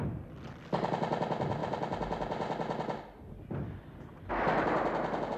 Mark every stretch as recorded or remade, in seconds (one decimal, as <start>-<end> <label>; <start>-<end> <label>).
0.0-5.4 recorded